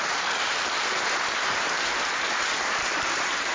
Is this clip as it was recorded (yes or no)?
no